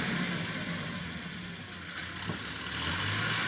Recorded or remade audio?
recorded